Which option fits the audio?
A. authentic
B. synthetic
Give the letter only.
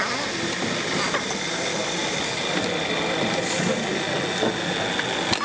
A